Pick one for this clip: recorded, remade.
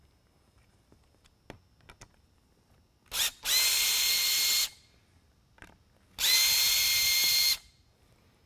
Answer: recorded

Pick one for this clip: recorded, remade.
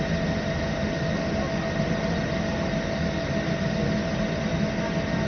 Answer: recorded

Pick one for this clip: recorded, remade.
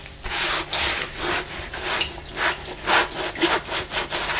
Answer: recorded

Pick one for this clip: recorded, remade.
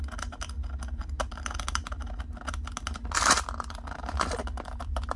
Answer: recorded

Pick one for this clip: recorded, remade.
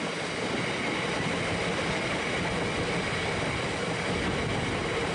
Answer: recorded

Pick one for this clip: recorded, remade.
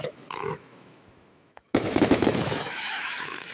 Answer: remade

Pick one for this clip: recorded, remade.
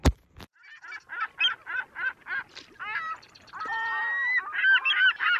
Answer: recorded